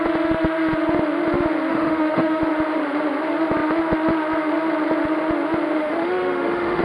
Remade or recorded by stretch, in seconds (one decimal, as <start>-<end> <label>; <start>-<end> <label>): 0.0-1.7 recorded; 1.7-2.4 remade; 2.4-5.8 recorded; 5.8-6.8 remade